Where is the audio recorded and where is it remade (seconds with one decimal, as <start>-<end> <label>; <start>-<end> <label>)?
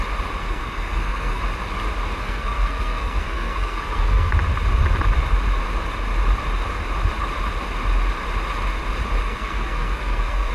0.0-0.4 recorded; 0.4-1.4 remade; 1.4-2.2 recorded; 2.2-4.3 remade; 4.3-9.2 recorded; 9.2-10.5 remade